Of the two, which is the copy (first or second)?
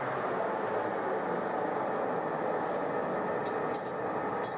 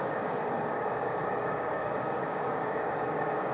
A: second